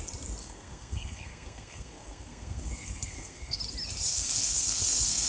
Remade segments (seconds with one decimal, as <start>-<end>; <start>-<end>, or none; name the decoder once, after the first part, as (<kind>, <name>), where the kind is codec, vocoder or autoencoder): 0.4-3.6 (codec, SNAC); 4.1-5.3